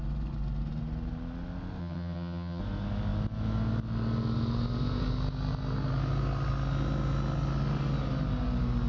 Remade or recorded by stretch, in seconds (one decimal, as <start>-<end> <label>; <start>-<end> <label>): 0.0-1.8 recorded; 1.8-2.6 remade; 2.6-8.9 recorded